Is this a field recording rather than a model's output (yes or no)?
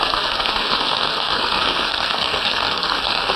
no